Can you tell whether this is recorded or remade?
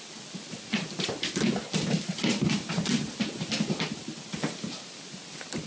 recorded